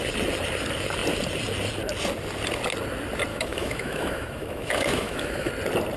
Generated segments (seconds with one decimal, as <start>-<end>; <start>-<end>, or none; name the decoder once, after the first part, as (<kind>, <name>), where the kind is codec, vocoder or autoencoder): 3.3-5.5 (autoencoder, DAC-VAE)

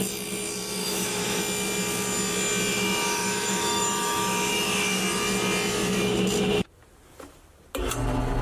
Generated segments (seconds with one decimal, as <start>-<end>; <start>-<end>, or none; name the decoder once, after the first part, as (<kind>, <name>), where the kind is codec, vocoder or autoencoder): 0.8-1.4 (autoencoder, DAC-VAE); 2.7-5.0

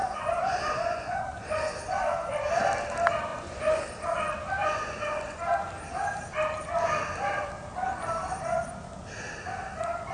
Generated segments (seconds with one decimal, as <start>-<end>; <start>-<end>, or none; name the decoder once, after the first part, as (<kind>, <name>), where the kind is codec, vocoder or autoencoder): 0.0-1.6 (vocoder, Vocos); 3.3-3.8; 4.6-5.5

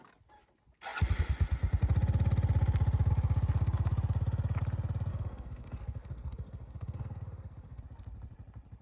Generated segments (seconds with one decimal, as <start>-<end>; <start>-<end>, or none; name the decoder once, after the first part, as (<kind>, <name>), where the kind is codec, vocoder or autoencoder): 5.1-7.8 (codec, SNAC)

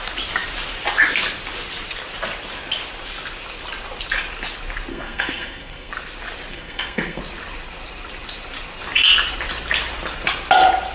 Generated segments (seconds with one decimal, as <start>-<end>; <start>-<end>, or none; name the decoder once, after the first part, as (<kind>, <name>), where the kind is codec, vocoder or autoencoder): 4.9-5.9 (codec, SNAC); 6.5-7.2

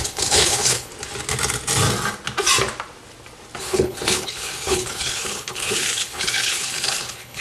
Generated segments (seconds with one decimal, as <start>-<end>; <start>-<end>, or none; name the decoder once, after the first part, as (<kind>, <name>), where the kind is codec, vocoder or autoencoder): 0.0-0.9 (codec, HILCodec); 3.6-7.4

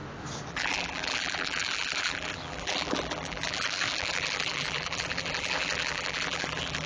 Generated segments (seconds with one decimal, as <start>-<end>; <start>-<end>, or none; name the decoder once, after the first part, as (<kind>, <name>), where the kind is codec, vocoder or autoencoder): 0.5-6.9 (vocoder, BigVGAN v2)

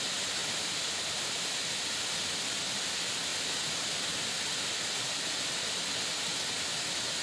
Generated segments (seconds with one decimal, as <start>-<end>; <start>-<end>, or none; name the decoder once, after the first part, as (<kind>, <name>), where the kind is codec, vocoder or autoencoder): none